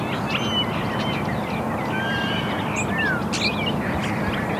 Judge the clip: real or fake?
real